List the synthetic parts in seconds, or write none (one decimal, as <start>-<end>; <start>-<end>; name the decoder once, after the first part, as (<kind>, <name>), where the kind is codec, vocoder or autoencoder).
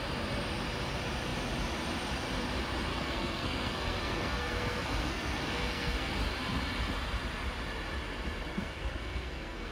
2.9-6.1 (codec, SNAC); 8.5-9.7